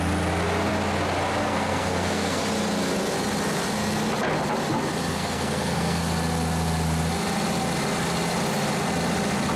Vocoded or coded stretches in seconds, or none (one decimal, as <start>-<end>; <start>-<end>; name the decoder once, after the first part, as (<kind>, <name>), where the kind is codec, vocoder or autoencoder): 1.4-2.4 (codec, SNAC); 5.1-6.0